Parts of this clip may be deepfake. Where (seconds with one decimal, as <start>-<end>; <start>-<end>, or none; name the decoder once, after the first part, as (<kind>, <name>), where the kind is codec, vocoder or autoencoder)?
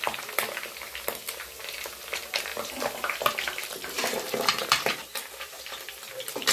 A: 2.5-6.1 (vocoder, BigVGAN v2)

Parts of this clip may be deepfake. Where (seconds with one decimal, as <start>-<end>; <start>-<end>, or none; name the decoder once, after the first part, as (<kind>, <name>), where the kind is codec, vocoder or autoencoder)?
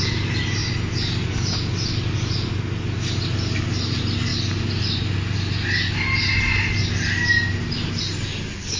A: none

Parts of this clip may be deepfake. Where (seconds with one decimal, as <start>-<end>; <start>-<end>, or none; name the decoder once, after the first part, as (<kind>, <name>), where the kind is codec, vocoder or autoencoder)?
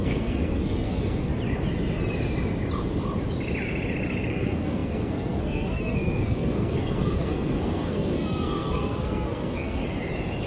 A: 0.0-1.3 (codec, SNAC); 4.3-9.8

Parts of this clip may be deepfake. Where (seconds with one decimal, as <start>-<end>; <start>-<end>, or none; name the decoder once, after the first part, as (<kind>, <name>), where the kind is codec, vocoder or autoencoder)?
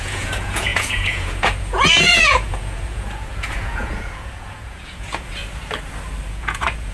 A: 0.0-5.4 (vocoder, Vocos); 6.3-6.9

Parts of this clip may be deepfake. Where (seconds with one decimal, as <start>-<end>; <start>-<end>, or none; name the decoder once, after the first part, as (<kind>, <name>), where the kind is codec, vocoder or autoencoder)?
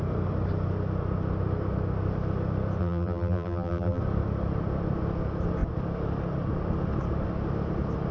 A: 2.8-4.0 (vocoder, BigVGAN v2)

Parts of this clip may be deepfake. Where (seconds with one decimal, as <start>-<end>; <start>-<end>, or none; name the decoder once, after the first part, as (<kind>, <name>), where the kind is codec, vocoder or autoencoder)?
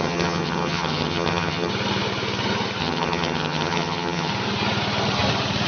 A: 0.0-1.7 (vocoder, HiFi-GAN); 2.8-4.3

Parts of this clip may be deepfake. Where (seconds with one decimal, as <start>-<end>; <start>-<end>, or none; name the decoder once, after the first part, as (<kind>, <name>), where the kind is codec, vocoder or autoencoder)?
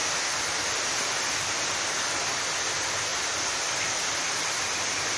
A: none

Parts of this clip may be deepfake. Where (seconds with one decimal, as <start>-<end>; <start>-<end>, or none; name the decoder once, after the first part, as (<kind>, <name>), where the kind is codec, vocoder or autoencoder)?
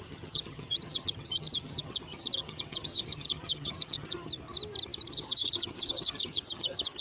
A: 0.0-4.3 (vocoder, HiFi-GAN); 5.1-7.0